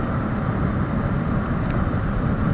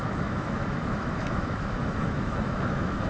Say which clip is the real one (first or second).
first